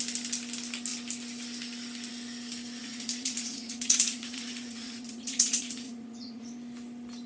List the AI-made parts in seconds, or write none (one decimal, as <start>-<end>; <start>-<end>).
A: 2.8-6.5